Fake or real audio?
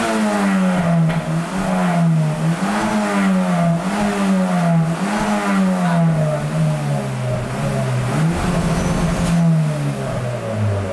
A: real